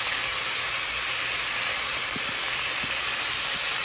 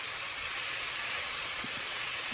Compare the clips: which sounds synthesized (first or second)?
second